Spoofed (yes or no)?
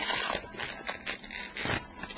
no